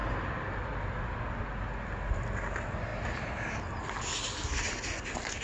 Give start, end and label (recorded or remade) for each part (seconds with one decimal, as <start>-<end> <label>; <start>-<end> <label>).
0.0-5.4 recorded